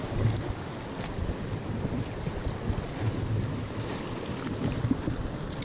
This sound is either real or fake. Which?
real